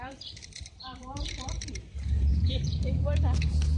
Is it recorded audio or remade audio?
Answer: remade